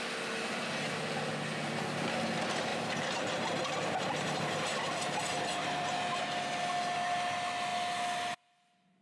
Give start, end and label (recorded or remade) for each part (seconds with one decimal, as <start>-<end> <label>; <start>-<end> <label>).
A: 0.0-2.7 recorded; 2.7-6.2 remade; 6.2-9.0 recorded